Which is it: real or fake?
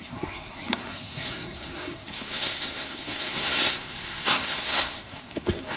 fake